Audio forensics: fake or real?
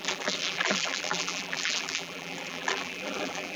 fake